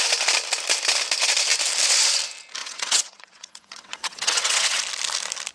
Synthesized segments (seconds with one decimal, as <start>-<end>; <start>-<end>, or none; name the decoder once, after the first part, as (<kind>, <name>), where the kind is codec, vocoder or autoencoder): 2.6-4.8 (vocoder, WaveNeXt)